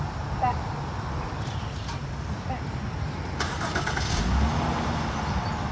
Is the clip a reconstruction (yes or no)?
no